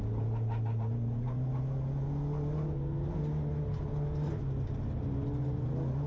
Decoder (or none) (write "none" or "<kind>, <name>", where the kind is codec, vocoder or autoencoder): none